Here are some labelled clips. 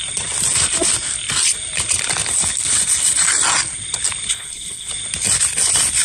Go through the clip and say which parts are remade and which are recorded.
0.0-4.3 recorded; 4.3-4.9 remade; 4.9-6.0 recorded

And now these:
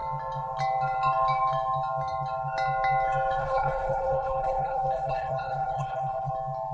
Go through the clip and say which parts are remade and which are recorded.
0.0-3.4 recorded; 3.4-6.3 remade; 6.3-6.7 recorded

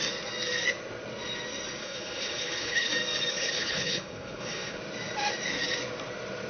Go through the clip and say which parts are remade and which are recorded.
0.0-1.8 recorded; 1.8-2.9 remade; 2.9-3.3 recorded; 3.3-4.8 remade; 4.8-6.5 recorded

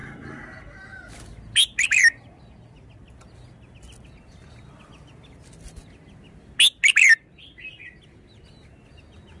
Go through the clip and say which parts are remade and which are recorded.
0.0-9.4 recorded

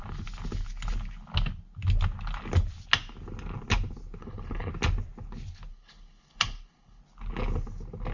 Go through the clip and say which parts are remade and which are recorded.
0.0-4.2 recorded; 4.2-4.7 remade; 4.7-5.7 recorded; 5.7-7.0 remade; 7.0-8.1 recorded

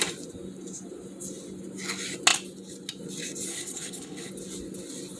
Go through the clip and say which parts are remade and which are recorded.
0.0-3.5 recorded; 3.5-4.3 remade; 4.3-5.2 recorded